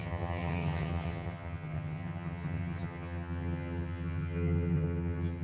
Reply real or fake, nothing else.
fake